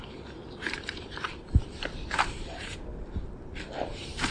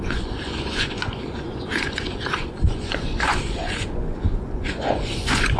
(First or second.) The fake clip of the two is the second